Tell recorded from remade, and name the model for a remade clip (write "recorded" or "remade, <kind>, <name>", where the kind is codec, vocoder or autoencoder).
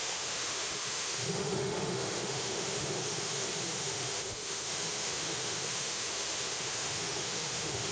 remade, autoencoder, DAC-VAE